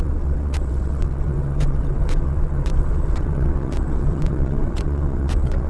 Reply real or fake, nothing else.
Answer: fake